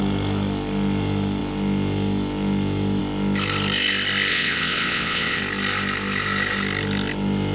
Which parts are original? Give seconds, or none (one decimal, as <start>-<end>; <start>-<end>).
0.0-4.3; 5.4-7.5